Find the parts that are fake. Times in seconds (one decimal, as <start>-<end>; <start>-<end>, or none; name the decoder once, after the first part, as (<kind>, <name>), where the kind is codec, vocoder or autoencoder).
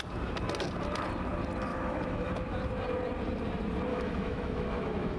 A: 1.7-2.3 (autoencoder, DAC-VAE); 3.9-5.2